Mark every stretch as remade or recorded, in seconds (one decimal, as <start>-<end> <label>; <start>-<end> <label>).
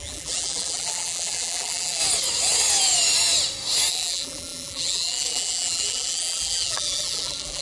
0.0-2.0 remade; 2.0-3.9 recorded; 3.9-7.6 remade